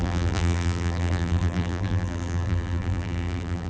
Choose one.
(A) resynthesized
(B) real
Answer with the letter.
A